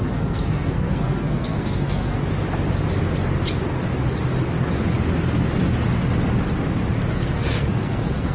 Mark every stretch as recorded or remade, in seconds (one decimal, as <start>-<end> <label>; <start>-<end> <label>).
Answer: 0.0-2.2 remade; 2.2-7.1 recorded; 7.1-8.3 remade